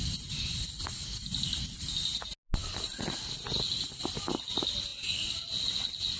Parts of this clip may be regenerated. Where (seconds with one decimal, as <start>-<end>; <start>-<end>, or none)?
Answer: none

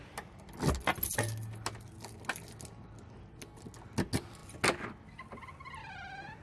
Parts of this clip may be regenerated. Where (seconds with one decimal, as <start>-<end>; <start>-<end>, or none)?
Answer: none

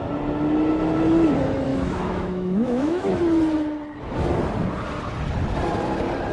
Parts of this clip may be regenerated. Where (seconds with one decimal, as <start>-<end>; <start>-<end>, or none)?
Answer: 1.7-3.2

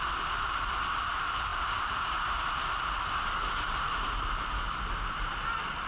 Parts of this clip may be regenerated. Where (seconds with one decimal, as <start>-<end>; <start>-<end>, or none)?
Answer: none

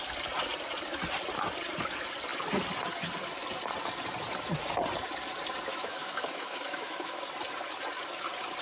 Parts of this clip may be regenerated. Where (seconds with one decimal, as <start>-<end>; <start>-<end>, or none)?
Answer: 5.7-7.2

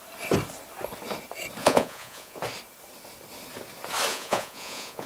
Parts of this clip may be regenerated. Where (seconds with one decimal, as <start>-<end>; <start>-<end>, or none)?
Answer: 1.6-2.4; 4.1-5.1